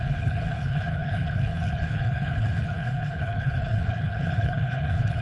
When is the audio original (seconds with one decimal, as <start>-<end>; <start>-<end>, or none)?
none